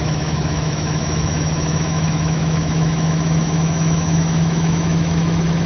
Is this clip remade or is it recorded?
remade